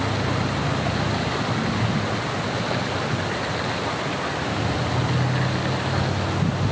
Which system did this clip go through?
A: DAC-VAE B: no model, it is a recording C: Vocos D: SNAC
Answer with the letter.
B